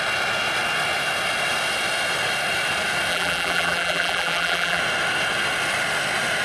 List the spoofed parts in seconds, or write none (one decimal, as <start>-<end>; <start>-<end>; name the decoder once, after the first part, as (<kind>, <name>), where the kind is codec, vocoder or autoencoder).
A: 3.1-4.8 (vocoder, BigVGAN v2)